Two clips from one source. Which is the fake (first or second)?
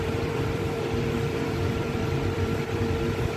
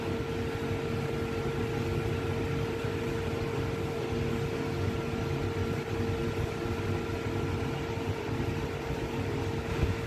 first